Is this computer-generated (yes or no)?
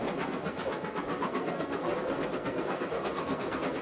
yes